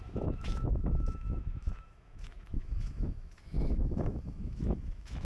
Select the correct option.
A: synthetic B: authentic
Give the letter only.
A